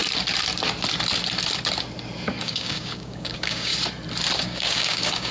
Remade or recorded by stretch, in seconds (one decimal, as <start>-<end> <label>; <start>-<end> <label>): 0.0-2.4 recorded; 2.4-3.7 remade; 3.7-4.4 recorded; 4.4-5.3 remade